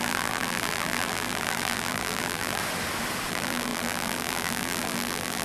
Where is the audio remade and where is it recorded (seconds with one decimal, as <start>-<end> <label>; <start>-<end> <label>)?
0.0-2.6 remade; 2.6-3.3 recorded; 3.3-5.4 remade